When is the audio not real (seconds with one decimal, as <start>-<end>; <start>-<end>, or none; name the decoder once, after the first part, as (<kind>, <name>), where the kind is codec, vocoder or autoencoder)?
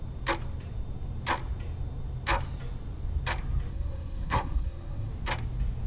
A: 3.7-5.1 (codec, SNAC)